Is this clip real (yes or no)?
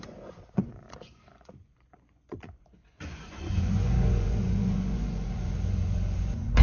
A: no